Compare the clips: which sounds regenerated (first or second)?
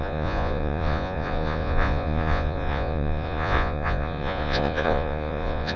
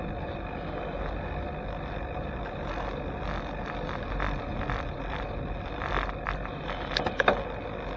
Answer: first